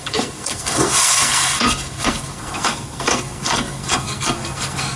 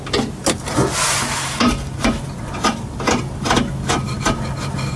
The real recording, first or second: second